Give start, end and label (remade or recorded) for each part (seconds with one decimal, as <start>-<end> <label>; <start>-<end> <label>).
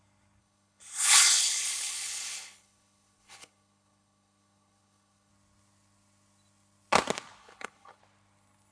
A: 0.0-0.4 recorded; 0.4-5.3 remade; 5.3-7.4 recorded; 7.4-8.0 remade; 8.0-8.7 recorded